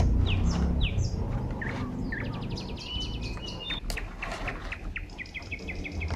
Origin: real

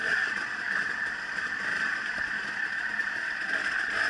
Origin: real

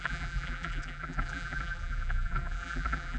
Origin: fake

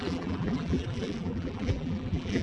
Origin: fake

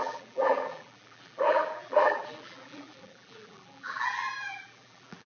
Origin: fake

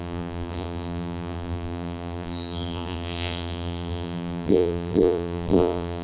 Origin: fake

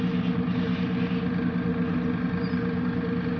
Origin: real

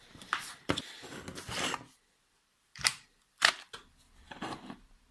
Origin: fake